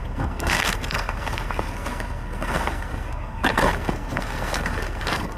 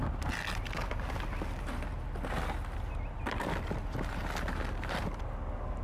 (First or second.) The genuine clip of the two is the second